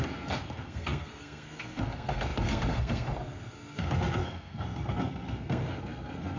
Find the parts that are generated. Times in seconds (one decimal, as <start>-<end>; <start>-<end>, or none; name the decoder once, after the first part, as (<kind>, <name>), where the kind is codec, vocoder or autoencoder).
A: 0.0-6.4 (codec, SNAC)